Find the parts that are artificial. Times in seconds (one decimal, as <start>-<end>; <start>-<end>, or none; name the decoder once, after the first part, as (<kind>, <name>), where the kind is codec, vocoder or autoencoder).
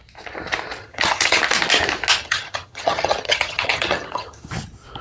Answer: 0.8-1.4 (vocoder, HiFi-GAN); 2.2-4.5